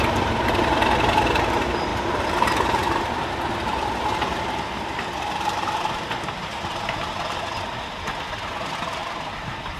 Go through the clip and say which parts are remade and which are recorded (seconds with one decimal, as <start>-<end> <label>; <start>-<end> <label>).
0.0-1.9 recorded; 1.9-3.0 remade; 3.0-9.8 recorded